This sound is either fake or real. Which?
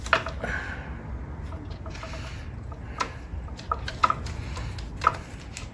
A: real